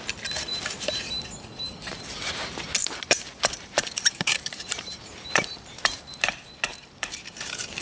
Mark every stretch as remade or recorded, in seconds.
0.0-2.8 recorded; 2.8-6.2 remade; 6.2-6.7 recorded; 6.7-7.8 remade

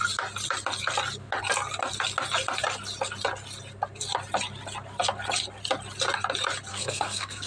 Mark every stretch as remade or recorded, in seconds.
0.0-6.7 recorded; 6.7-7.5 remade

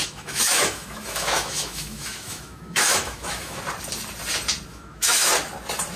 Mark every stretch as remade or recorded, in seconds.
0.0-3.6 remade; 3.6-4.7 recorded; 4.7-5.3 remade; 5.3-6.0 recorded